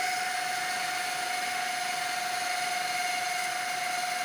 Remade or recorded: recorded